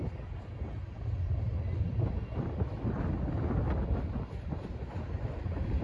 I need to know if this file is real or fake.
real